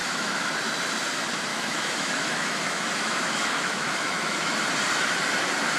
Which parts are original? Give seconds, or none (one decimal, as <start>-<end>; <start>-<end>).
0.5-1.5; 4.5-5.8